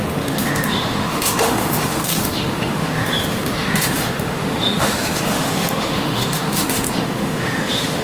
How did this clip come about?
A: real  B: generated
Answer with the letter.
B